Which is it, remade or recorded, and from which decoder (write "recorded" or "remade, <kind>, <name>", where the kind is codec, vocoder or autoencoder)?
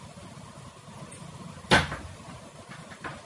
recorded